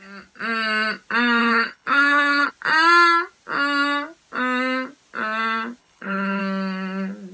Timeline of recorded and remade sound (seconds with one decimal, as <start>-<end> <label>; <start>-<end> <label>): 0.0-1.4 recorded; 1.4-2.5 remade; 2.5-5.8 recorded; 5.8-6.4 remade; 6.4-7.3 recorded